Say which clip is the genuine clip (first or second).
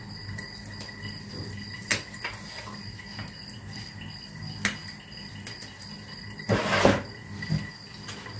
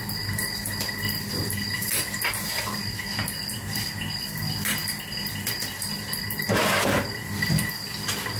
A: first